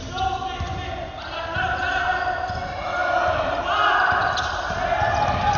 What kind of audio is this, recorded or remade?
recorded